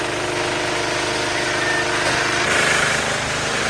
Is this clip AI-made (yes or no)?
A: no